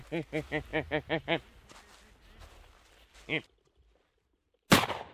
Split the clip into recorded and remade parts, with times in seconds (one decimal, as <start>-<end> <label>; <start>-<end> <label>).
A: 0.0-5.1 recorded